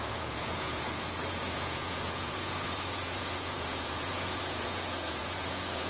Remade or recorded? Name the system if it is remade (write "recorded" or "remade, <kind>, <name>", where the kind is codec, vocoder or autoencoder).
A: remade, vocoder, Vocos